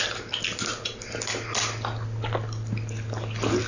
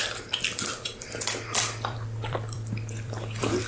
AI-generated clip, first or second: second